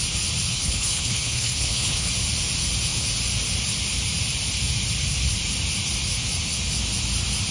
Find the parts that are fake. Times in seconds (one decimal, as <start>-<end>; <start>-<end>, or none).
0.5-2.1